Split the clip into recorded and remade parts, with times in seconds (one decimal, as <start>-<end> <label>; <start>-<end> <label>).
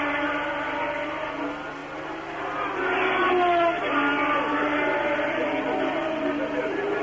0.0-7.0 recorded